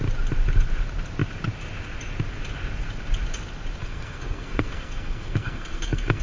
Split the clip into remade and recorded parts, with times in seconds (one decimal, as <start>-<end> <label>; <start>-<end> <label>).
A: 0.0-3.8 recorded; 3.8-6.2 remade